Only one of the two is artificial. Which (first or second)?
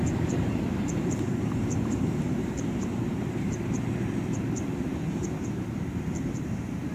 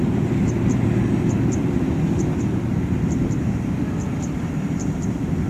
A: first